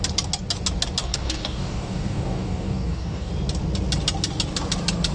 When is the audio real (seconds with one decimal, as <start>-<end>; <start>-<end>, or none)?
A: 0.0-1.0; 3.3-5.1

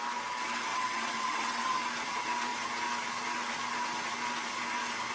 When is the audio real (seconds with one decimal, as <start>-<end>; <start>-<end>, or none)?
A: 0.0-0.7; 1.8-5.1

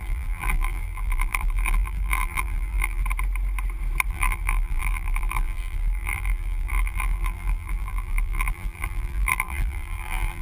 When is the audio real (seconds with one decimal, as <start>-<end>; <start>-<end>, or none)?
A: 3.0-4.1

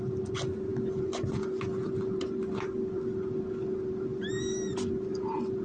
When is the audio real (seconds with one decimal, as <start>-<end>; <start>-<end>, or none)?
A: 0.0-5.6

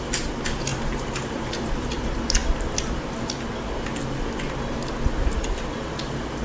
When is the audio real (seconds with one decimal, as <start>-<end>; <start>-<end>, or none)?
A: 0.0-0.7; 1.7-6.4

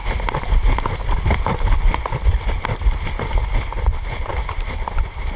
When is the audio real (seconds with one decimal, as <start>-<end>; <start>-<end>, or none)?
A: 0.0-5.4

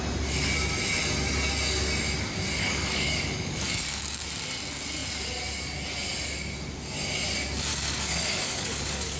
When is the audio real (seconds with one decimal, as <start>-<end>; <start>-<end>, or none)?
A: 0.0-2.6; 4.2-7.7

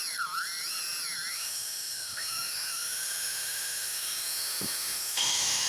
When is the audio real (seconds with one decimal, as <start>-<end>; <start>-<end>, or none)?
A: 0.0-1.3